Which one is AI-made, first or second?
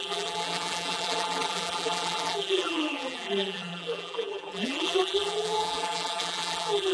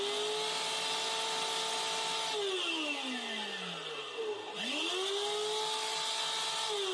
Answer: first